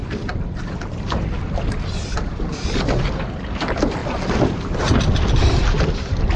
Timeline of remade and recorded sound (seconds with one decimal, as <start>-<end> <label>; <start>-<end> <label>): 0.0-1.8 remade; 1.8-4.0 recorded; 4.0-4.7 remade; 4.7-6.4 recorded